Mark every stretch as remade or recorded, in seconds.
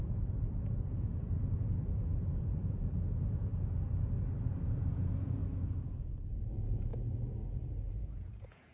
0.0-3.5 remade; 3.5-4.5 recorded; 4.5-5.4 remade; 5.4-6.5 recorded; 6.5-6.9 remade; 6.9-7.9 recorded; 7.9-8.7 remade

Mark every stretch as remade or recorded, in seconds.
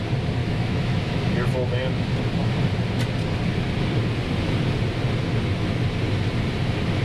0.0-0.4 recorded; 0.4-1.2 remade; 1.2-7.0 recorded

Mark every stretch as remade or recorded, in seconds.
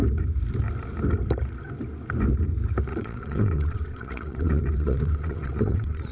0.0-2.9 recorded; 2.9-6.1 remade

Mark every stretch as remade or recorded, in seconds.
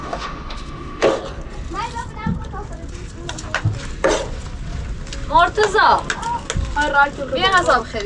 0.0-1.2 remade; 1.2-8.1 recorded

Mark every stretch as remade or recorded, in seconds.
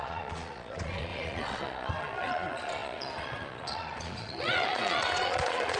0.0-5.8 remade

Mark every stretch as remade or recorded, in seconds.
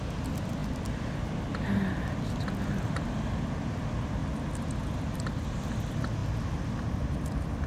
0.0-7.7 recorded